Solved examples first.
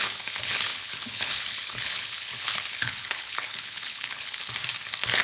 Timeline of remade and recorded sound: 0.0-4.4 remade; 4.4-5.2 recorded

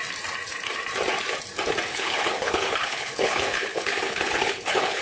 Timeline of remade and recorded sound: 0.0-1.9 recorded; 1.9-5.0 remade

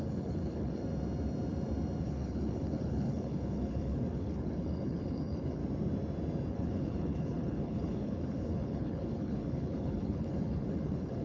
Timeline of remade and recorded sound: 0.0-0.8 remade; 0.8-2.0 recorded; 2.0-5.6 remade; 5.6-6.5 recorded; 6.5-11.2 remade